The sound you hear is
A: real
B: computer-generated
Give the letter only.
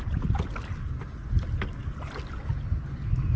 A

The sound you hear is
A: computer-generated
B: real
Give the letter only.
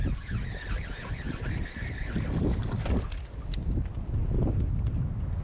B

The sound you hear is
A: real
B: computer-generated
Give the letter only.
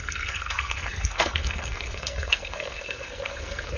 B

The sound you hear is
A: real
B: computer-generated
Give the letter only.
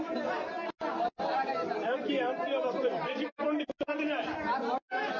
A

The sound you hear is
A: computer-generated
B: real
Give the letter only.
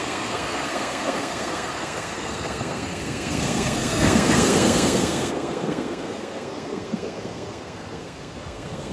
A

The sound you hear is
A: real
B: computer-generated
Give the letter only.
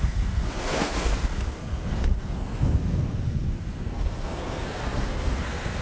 B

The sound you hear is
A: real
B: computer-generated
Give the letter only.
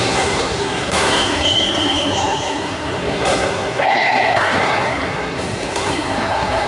B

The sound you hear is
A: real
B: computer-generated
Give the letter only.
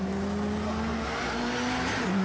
A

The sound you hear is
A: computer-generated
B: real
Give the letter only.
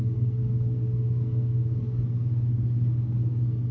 A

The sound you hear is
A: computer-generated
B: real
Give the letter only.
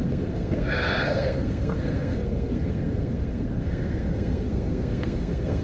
A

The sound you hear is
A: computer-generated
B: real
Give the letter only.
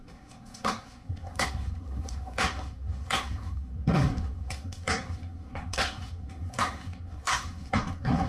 A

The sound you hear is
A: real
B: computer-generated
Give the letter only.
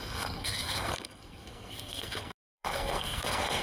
B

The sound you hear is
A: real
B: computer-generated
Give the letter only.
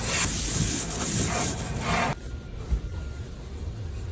A